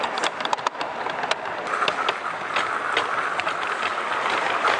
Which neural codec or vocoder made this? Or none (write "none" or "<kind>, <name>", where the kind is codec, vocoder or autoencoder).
none